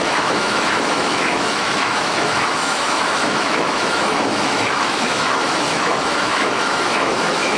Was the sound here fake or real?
fake